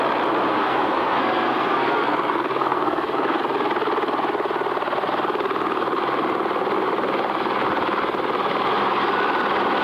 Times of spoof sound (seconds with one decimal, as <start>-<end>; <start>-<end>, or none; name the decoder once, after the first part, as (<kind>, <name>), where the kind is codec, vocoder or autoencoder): 0.5-3.4 (codec, SNAC)